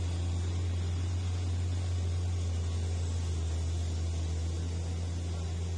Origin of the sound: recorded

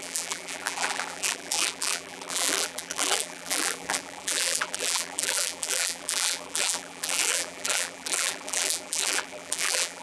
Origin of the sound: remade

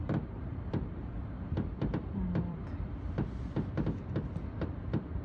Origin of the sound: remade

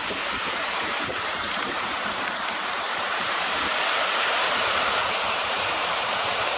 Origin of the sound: remade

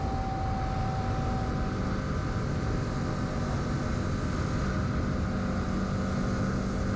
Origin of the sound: recorded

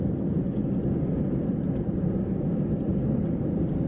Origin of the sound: recorded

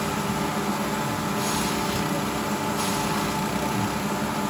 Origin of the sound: recorded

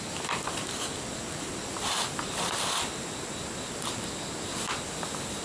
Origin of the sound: recorded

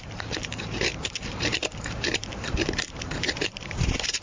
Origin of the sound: remade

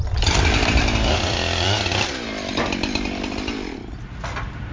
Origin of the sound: remade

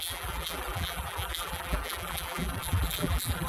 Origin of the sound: remade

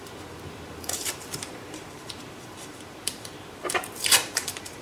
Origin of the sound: remade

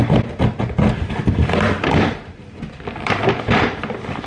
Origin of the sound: remade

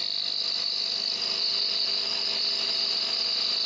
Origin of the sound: recorded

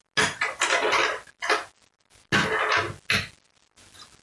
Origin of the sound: recorded